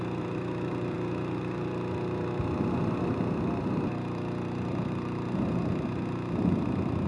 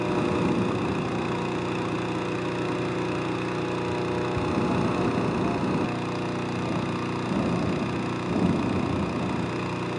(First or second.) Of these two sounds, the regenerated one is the first